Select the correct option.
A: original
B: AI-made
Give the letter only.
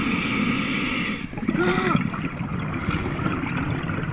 A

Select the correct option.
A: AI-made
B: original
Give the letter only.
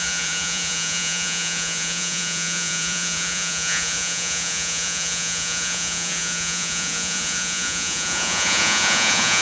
A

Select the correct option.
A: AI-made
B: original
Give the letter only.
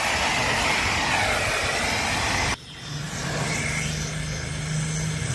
B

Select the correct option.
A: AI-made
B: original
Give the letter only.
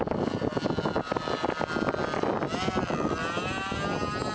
B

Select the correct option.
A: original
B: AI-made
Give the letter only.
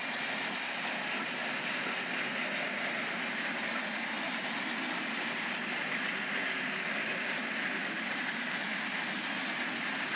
A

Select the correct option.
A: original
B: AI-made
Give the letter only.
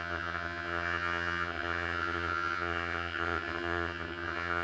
B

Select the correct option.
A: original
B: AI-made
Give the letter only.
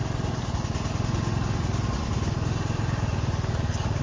A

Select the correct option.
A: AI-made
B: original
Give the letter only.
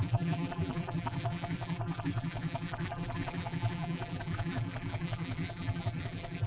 A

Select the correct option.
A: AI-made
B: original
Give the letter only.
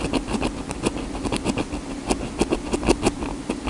B